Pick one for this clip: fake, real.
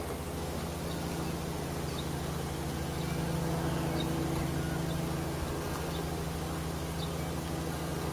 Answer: real